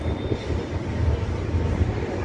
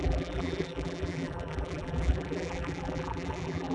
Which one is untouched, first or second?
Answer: first